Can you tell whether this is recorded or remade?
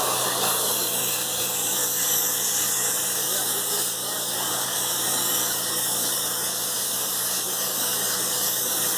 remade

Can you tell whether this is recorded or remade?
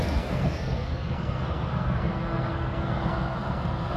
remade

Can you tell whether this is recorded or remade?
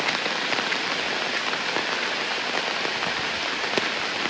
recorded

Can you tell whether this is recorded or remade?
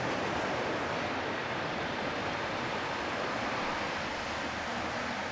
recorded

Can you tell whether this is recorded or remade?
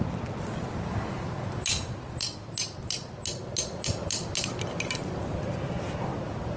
recorded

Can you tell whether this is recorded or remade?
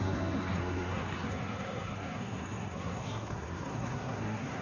remade